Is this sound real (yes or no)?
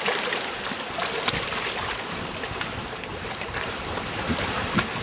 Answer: yes